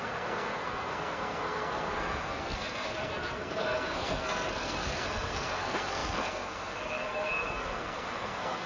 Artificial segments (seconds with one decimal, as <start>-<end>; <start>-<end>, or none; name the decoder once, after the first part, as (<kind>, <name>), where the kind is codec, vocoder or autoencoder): 0.0-8.7 (codec, SNAC)